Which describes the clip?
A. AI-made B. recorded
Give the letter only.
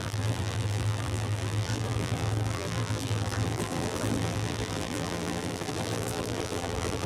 A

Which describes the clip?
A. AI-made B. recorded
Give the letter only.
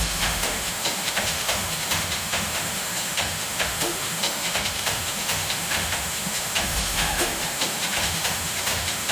A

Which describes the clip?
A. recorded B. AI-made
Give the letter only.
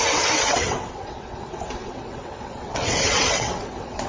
B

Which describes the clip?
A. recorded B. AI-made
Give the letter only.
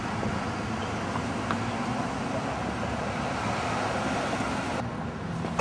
A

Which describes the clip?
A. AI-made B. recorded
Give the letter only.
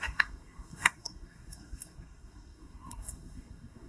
A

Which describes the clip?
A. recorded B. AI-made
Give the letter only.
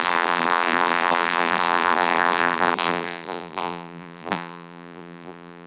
B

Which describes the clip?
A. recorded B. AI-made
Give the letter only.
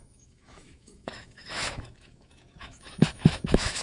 B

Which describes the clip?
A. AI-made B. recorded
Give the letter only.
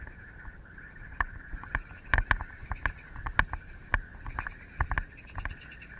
B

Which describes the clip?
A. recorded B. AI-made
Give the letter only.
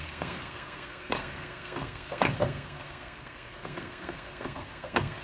B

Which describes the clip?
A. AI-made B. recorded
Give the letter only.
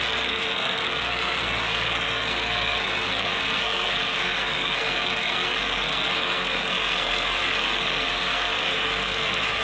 A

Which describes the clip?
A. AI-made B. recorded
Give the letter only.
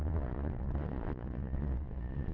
A